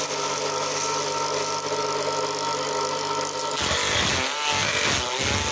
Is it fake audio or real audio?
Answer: real